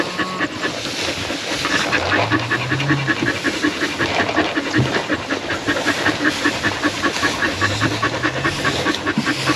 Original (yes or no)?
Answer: yes